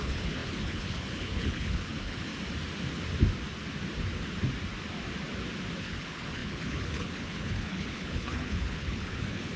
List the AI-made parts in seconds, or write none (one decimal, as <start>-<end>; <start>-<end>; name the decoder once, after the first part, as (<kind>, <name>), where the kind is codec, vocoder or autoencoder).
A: 0.0-2.3 (codec, HILCodec); 5.8-9.6